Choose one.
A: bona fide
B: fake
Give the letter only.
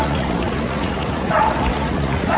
B